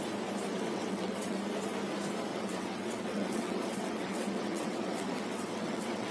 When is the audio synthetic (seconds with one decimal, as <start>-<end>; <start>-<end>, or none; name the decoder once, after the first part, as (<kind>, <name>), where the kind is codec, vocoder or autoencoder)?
0.5-1.4 (vocoder, WaveNeXt); 2.3-6.1